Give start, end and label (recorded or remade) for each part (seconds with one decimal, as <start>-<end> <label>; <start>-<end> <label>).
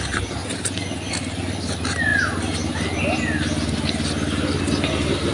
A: 0.0-5.3 recorded